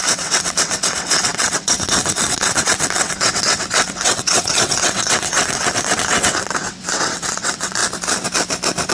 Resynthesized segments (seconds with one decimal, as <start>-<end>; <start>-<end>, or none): 0.0-7.8